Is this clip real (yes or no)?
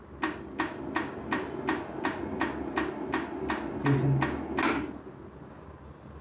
yes